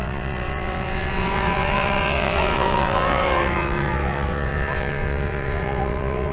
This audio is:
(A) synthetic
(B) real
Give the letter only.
A